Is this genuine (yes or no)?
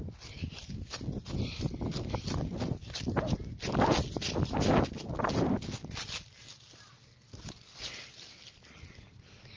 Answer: yes